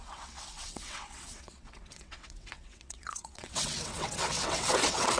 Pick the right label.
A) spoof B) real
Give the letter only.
A